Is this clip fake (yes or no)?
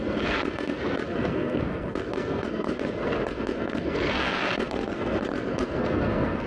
yes